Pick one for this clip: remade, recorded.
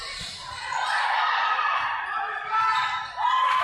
recorded